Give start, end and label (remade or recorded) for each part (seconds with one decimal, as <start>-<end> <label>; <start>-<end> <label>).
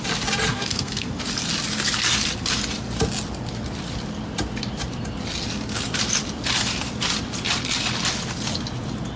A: 0.0-0.5 recorded; 0.5-1.1 remade; 1.1-9.2 recorded